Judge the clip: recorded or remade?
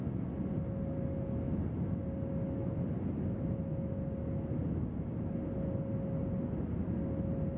recorded